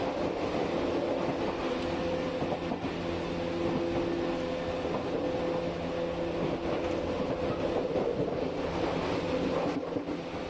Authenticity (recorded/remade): recorded